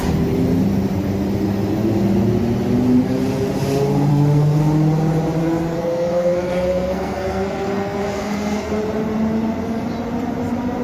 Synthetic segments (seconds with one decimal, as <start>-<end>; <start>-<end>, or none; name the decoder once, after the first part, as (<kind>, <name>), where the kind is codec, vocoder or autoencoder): 4.1-4.6 (codec, SNAC); 5.4-8.7